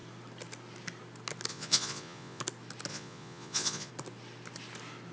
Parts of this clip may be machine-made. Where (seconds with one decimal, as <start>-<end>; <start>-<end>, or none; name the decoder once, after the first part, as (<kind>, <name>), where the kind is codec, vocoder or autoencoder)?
1.5-2.4 (vocoder, Vocos); 2.9-3.9